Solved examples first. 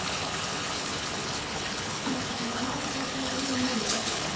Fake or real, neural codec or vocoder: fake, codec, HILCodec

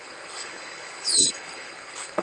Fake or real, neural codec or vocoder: fake, codec, HILCodec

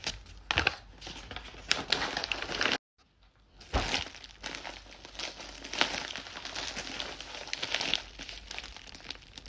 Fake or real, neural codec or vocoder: real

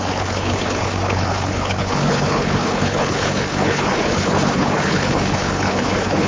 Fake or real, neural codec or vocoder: fake, codec, HILCodec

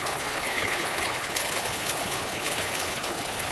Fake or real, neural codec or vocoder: fake, codec, HILCodec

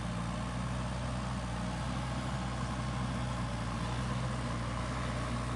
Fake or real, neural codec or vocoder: real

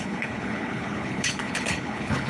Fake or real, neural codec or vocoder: fake, codec, HILCodec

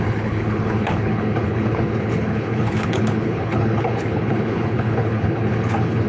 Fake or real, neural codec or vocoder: fake, codec, HILCodec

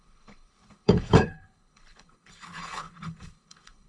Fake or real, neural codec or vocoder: fake, codec, HILCodec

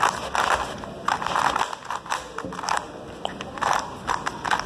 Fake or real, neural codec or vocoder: real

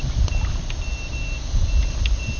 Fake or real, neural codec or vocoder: real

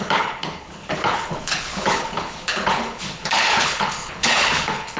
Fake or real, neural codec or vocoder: fake, codec, HILCodec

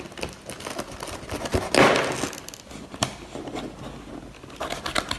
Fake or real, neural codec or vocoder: real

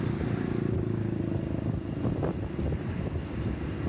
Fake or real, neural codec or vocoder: real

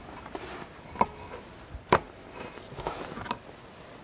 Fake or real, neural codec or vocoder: real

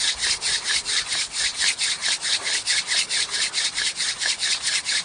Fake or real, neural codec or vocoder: real